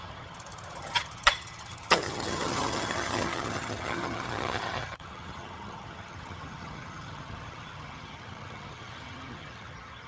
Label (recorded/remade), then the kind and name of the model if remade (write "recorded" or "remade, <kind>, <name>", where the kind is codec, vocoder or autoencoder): remade, vocoder, HiFi-GAN